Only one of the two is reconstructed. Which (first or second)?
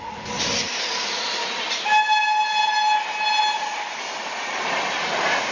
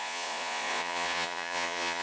second